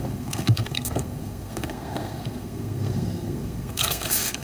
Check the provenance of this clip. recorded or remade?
remade